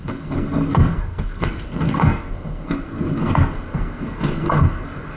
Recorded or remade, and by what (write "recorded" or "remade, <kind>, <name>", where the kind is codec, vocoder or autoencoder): remade, codec, SNAC